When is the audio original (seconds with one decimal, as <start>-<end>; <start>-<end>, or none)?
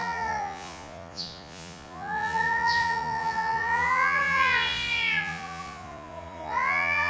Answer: none